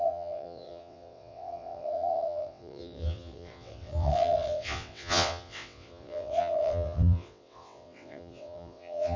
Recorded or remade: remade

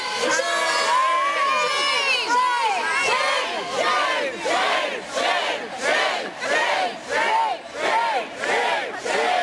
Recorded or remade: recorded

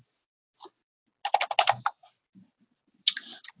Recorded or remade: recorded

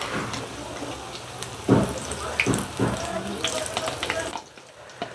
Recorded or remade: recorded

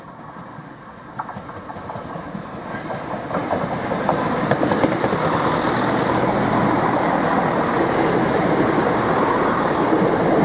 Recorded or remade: recorded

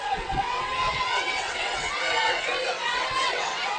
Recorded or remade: remade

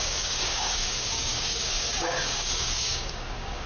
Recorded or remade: remade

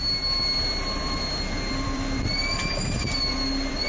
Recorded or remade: remade